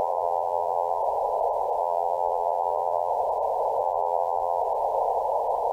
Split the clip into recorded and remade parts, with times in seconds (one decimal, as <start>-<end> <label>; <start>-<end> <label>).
0.0-1.0 remade; 1.0-1.8 recorded; 1.8-3.1 remade; 3.1-3.8 recorded; 3.8-4.6 remade; 4.6-5.7 recorded